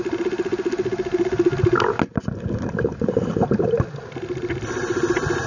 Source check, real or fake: real